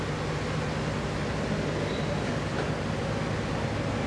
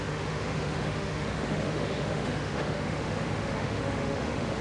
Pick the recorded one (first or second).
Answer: first